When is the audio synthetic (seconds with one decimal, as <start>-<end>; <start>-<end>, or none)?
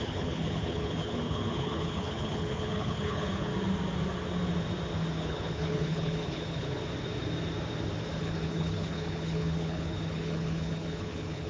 0.0-3.5; 5.2-6.8; 8.2-11.5